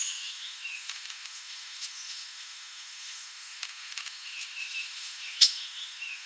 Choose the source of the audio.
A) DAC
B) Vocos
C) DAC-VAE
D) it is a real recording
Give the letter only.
C